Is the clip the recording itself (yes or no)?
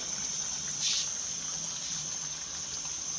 yes